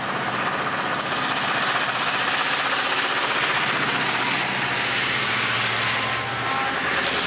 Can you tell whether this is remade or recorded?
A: recorded